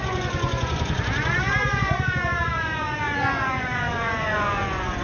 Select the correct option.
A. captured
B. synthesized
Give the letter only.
B